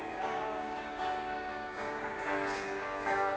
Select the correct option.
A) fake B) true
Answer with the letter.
A